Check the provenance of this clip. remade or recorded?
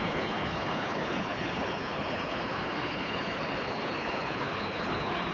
remade